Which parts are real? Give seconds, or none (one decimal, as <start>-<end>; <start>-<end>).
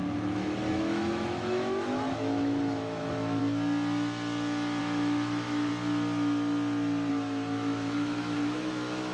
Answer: 3.4-4.8; 5.7-7.1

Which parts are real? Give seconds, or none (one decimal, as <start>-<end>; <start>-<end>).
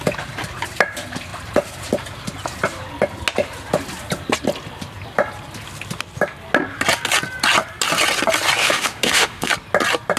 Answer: 0.0-8.6; 9.5-10.2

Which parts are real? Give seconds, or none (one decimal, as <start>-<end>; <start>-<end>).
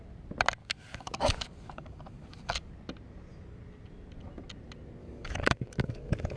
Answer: 0.0-0.6; 2.7-5.0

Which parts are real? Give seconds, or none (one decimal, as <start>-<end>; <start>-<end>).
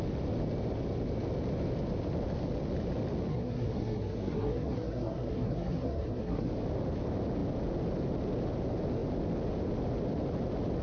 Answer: 0.0-3.3; 6.5-10.8